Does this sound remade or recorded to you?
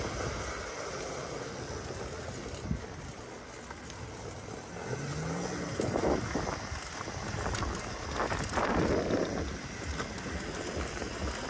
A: recorded